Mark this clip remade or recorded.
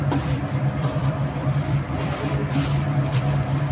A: remade